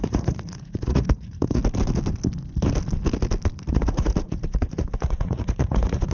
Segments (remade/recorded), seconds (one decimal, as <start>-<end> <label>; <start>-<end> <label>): 0.0-1.6 remade; 1.6-3.7 recorded; 3.7-6.1 remade

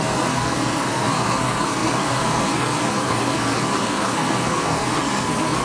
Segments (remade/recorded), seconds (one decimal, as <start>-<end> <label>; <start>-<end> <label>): 0.0-5.6 remade

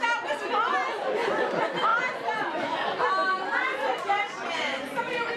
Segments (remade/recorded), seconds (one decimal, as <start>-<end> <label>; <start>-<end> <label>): 0.0-5.4 recorded

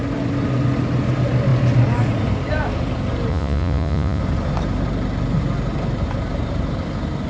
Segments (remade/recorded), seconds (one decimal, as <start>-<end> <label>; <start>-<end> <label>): 0.0-3.3 recorded; 3.3-4.2 remade; 4.2-7.3 recorded

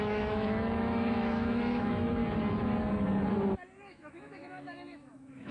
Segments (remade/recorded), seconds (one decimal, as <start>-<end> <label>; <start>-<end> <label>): 0.0-2.2 remade; 2.2-3.8 recorded; 3.8-5.5 remade

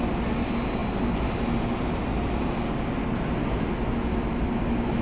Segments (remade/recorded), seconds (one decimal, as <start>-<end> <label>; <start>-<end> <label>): 0.0-5.0 recorded

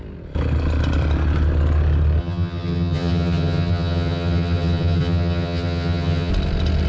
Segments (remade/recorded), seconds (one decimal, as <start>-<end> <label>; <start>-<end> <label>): 0.0-2.2 recorded; 2.2-6.3 remade; 6.3-6.9 recorded